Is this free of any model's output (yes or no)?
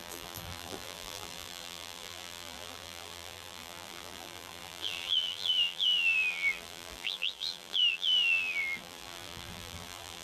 no